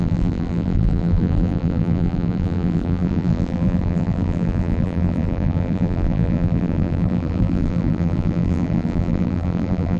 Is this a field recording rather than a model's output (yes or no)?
no